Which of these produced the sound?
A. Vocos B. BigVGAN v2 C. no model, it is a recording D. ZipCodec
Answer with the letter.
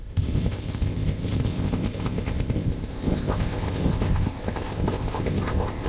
D